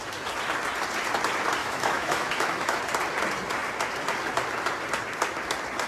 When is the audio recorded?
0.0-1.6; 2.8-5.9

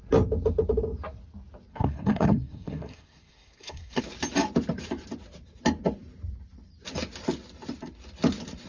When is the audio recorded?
0.0-1.7; 4.0-8.7

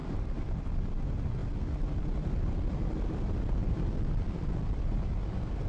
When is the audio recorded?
0.9-3.6; 5.0-5.7

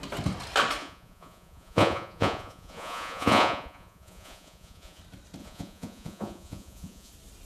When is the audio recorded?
0.0-0.8; 5.0-5.4; 7.1-7.5

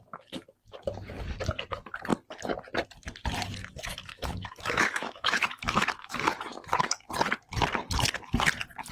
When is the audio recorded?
0.0-3.6; 7.1-8.9